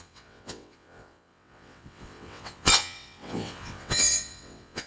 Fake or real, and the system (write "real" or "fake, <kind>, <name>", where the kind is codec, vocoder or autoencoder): fake, vocoder, WaveNeXt